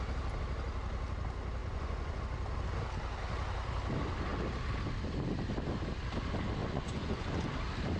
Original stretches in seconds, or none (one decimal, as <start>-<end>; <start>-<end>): 0.0-1.6; 2.2-6.6; 7.4-8.0